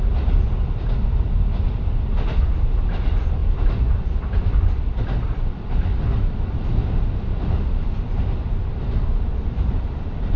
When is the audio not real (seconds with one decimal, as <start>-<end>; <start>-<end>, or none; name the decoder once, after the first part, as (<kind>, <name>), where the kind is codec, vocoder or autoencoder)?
none